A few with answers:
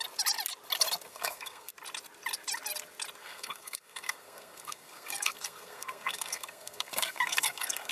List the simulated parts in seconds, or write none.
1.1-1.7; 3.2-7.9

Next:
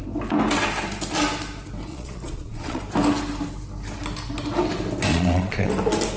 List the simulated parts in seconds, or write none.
1.9-2.8; 5.1-5.7

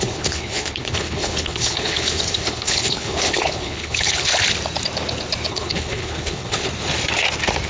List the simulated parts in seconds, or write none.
0.0-4.3; 5.5-6.7

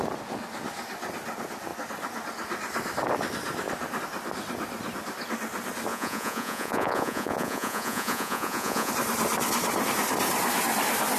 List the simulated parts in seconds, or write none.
5.9-8.9

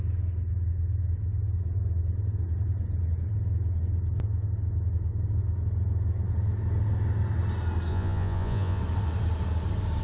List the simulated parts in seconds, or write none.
7.9-8.8

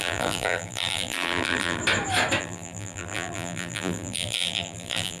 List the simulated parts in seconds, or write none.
0.0-1.8; 2.4-5.2

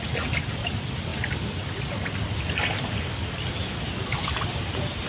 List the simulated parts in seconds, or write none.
none